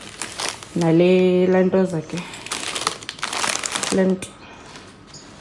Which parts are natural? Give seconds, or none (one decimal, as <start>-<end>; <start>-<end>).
0.0-5.4